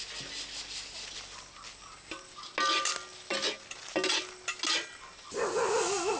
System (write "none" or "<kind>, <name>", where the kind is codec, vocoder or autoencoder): none